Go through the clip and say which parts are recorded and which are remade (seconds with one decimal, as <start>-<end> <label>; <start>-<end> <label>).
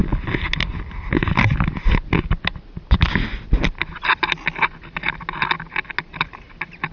0.0-6.9 recorded